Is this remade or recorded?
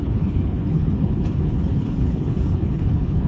remade